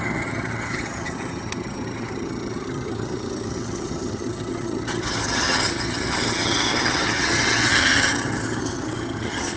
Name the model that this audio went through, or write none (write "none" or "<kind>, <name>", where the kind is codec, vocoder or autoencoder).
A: vocoder, HiFi-GAN